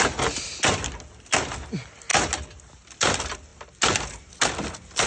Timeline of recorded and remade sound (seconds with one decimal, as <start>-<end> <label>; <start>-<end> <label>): 0.0-5.1 recorded